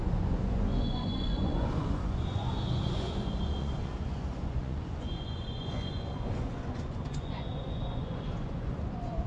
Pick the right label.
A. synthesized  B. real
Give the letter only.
A